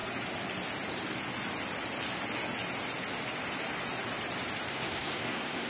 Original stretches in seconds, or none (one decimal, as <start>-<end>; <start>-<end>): 0.0-4.7